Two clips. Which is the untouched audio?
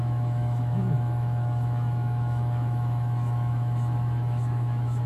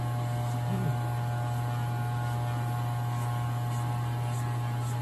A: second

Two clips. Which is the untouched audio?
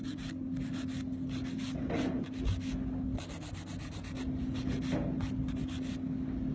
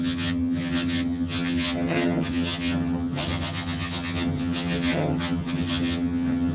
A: first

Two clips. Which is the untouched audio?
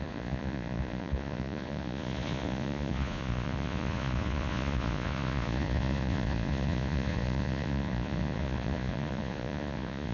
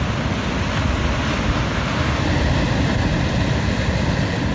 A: second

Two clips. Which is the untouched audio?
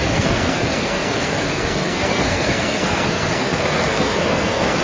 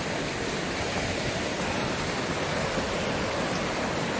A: second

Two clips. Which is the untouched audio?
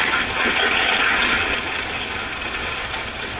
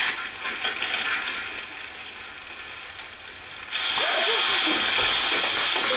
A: second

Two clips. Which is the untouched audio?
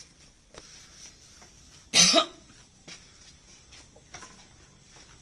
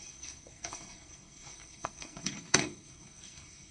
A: first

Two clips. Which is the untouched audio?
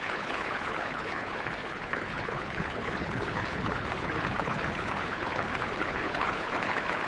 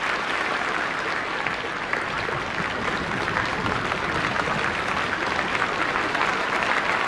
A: second